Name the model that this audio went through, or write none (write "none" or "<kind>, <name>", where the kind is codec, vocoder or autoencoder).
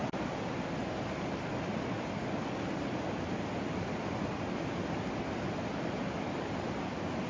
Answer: none